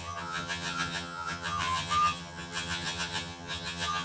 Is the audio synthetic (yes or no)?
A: yes